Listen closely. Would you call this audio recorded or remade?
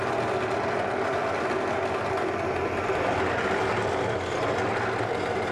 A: recorded